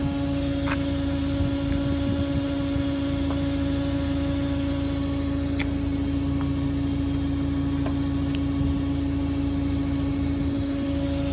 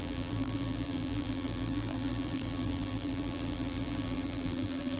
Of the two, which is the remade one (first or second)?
second